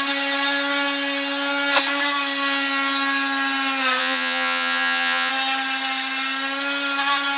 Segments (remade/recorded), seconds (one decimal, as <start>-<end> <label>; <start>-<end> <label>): 0.0-4.0 recorded; 4.0-5.3 remade; 5.3-7.4 recorded